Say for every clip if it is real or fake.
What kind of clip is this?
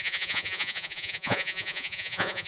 fake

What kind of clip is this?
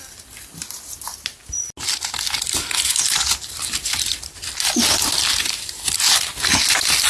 real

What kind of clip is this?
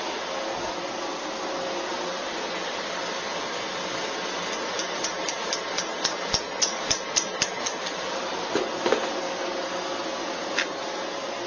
real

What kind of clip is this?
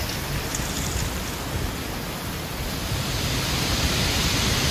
real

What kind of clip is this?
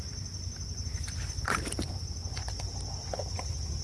real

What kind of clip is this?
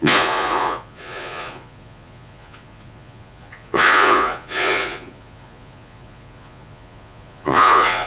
fake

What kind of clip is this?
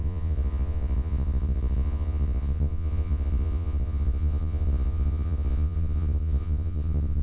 fake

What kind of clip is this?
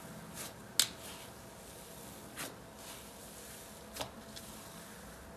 real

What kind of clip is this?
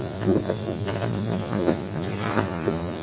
fake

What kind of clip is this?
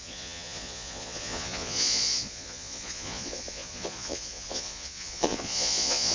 fake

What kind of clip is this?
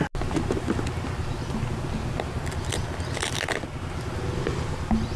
real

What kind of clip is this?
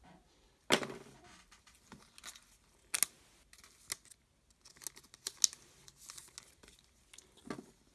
real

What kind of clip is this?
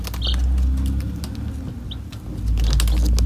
real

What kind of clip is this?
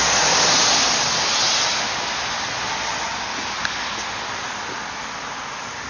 real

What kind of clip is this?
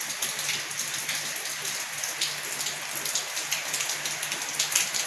real